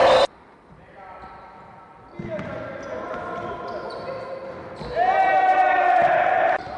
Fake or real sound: real